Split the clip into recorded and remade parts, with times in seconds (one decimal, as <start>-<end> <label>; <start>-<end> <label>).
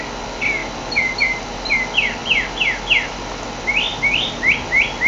0.0-5.1 recorded